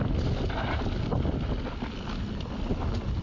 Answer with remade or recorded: recorded